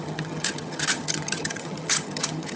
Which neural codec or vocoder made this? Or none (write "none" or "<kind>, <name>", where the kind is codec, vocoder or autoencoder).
vocoder, HiFi-GAN